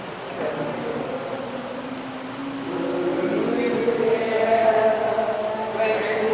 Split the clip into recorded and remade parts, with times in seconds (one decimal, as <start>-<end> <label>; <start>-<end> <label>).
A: 0.0-6.3 recorded